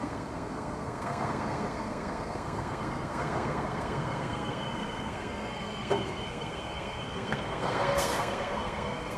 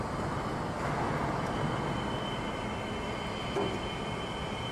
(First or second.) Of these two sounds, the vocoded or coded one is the first